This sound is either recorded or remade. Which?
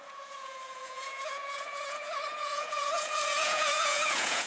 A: remade